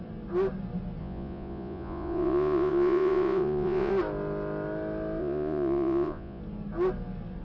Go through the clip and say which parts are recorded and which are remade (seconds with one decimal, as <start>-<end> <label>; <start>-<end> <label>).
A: 0.0-1.0 recorded; 1.0-3.9 remade; 3.9-5.2 recorded; 5.2-6.4 remade; 6.4-7.4 recorded